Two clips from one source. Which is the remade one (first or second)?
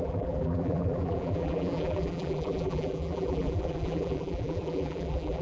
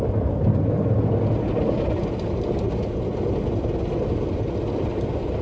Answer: first